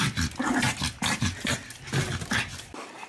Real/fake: real